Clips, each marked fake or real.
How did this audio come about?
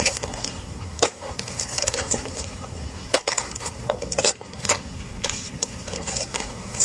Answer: fake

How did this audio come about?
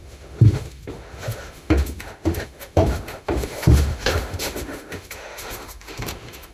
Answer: fake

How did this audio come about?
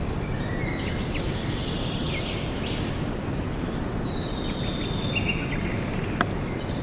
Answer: real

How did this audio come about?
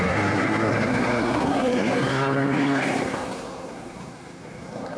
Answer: fake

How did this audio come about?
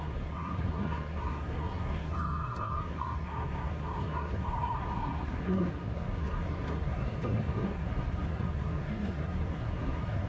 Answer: fake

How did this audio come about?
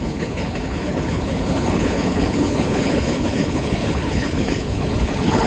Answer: fake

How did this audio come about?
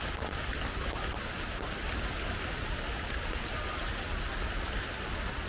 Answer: real